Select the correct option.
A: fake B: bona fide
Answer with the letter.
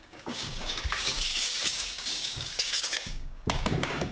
A